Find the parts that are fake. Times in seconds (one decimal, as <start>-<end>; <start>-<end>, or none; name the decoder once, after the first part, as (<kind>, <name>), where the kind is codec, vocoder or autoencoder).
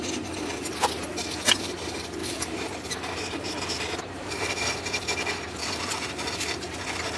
2.2-4.5 (vocoder, BigVGAN v2); 5.6-7.2